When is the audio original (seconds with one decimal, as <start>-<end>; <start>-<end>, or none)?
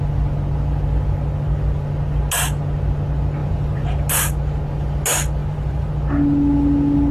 0.0-3.4; 4.0-5.4; 5.9-7.1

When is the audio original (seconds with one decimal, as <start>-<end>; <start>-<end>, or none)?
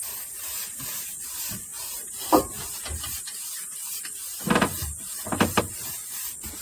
0.0-1.7; 5.6-6.6